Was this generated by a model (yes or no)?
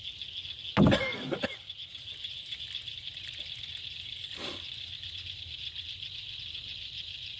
no